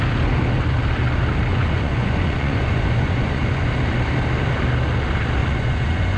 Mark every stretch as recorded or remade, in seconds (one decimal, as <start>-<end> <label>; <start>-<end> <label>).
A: 0.0-1.5 recorded; 1.5-3.7 remade; 3.7-5.4 recorded; 5.4-6.2 remade